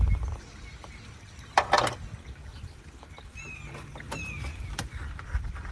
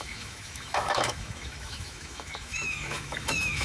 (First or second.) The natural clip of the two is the first